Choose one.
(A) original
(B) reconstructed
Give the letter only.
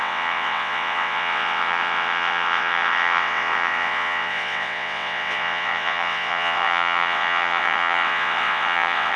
B